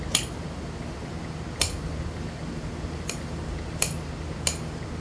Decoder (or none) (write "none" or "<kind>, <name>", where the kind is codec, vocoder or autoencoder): none